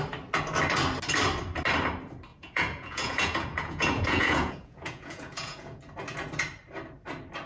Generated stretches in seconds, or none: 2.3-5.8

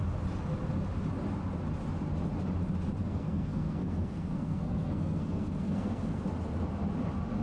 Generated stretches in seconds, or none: 3.0-6.2